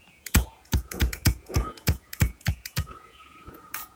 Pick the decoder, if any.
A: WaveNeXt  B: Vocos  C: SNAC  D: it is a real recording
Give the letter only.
B